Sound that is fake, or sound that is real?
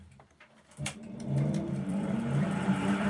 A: fake